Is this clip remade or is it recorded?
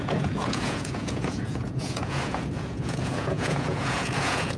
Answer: remade